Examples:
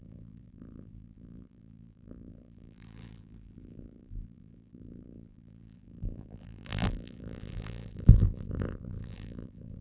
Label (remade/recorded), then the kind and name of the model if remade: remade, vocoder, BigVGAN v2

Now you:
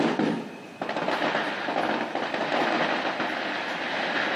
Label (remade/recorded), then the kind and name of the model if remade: recorded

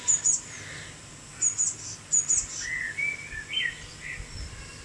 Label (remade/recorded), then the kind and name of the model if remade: recorded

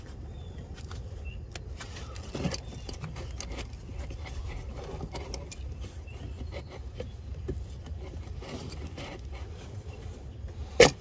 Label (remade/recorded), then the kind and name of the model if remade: recorded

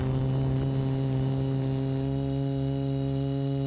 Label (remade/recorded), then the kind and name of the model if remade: recorded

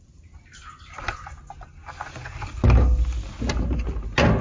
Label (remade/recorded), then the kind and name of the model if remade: recorded